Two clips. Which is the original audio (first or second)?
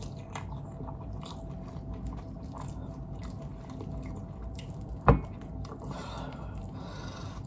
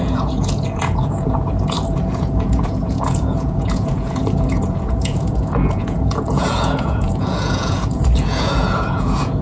first